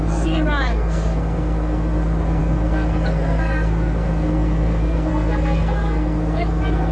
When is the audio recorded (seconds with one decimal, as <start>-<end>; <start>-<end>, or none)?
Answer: none